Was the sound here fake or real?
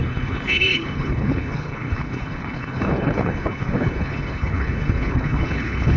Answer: fake